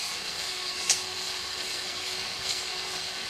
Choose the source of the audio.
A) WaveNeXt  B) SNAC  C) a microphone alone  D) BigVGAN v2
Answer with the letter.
B